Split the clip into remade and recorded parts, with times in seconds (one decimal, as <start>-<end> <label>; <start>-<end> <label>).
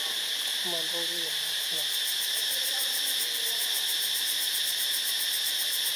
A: 0.0-0.5 recorded; 0.5-3.0 remade; 3.0-3.6 recorded; 3.6-5.3 remade; 5.3-6.0 recorded